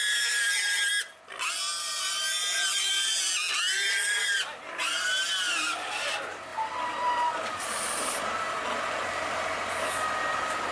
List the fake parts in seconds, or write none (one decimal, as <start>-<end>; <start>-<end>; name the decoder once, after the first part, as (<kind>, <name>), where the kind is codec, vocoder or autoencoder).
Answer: 6.5-8.2 (vocoder, BigVGAN v2)